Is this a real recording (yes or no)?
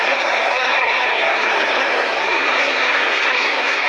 no